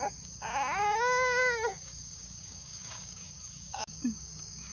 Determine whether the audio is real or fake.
fake